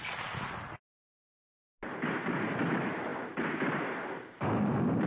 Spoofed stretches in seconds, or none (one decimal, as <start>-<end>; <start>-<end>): none